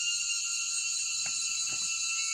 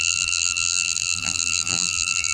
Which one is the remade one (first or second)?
second